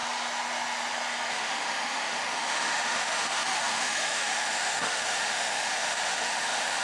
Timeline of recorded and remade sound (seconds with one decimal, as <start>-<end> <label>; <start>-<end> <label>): 0.0-1.3 recorded; 1.3-6.8 remade